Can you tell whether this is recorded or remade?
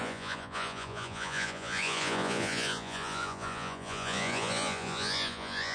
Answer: remade